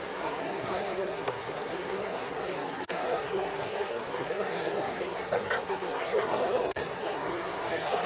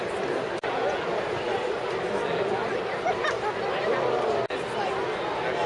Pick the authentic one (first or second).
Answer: second